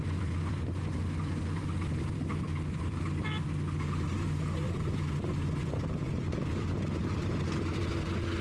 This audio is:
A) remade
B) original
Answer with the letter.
A